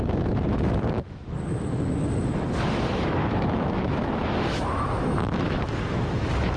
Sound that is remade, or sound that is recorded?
remade